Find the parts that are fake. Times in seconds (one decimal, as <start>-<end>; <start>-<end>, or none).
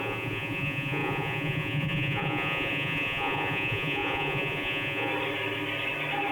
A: 0.0-5.1